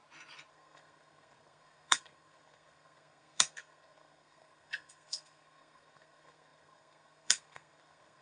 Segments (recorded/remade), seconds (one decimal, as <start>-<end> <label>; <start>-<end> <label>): 0.0-0.5 recorded; 0.5-8.2 remade